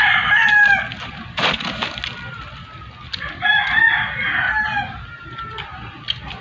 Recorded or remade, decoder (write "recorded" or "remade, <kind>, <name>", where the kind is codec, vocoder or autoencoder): recorded